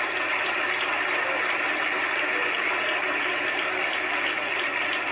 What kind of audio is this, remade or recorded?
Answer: recorded